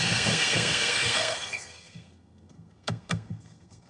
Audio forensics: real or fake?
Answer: fake